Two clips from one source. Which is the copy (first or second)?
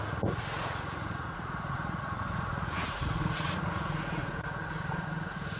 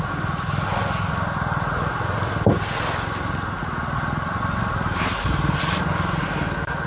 first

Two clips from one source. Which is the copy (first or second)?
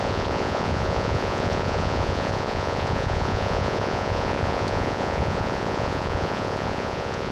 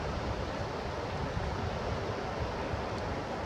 first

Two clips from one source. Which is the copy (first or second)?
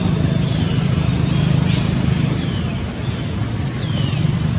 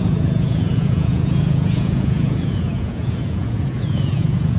second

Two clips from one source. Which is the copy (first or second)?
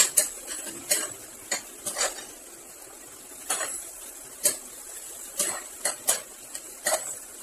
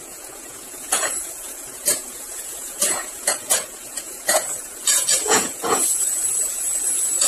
second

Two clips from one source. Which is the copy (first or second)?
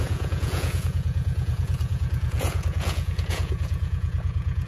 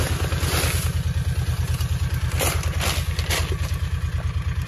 first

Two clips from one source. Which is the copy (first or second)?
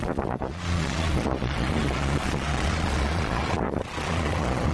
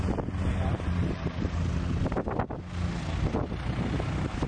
first